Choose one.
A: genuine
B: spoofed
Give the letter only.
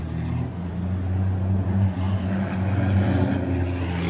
A